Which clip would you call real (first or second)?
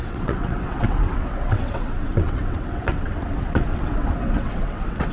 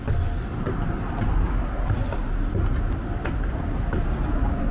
second